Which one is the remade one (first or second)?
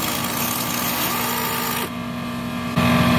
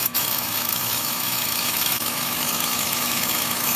second